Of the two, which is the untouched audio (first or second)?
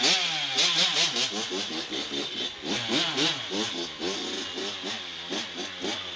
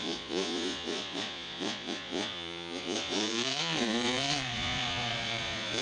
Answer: first